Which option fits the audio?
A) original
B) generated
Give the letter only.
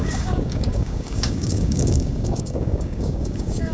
B